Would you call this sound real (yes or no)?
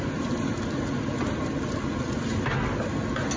yes